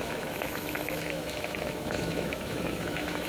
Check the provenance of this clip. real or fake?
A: fake